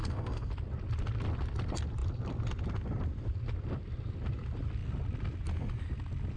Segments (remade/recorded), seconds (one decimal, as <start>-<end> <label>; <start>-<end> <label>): 0.0-0.5 remade; 0.5-6.4 recorded